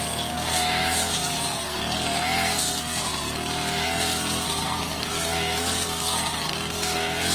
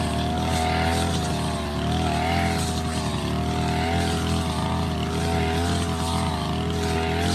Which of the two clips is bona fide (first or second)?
second